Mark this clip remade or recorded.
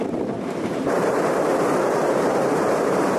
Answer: remade